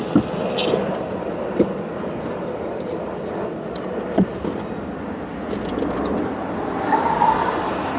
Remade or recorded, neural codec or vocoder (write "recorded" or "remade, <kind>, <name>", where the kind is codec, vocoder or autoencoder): recorded